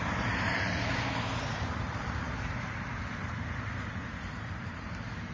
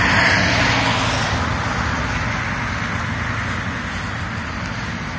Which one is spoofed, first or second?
first